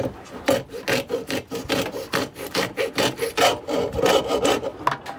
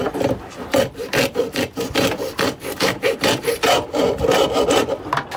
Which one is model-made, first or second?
second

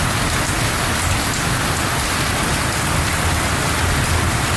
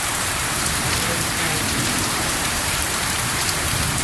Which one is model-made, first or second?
second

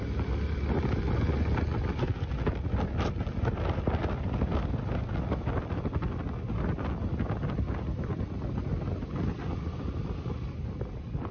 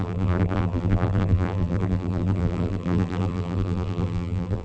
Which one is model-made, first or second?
second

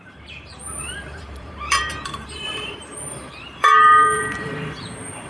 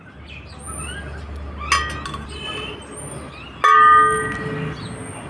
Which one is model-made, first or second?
first